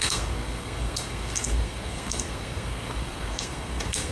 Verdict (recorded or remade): remade